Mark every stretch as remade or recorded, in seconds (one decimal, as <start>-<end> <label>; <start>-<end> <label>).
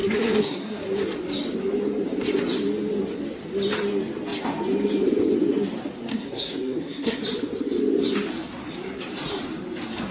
0.0-0.8 remade; 0.8-6.1 recorded; 6.1-7.2 remade; 7.2-10.1 recorded